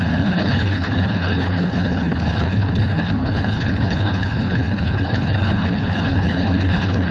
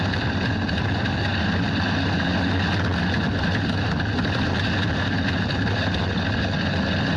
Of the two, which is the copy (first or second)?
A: first